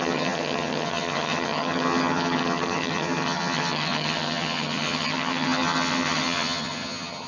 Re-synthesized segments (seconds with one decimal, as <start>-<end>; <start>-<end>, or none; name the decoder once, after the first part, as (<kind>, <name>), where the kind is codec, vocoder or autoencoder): 0.0-7.3 (vocoder, HiFi-GAN)